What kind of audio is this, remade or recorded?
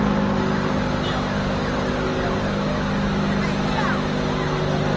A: recorded